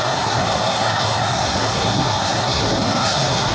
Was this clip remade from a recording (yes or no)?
yes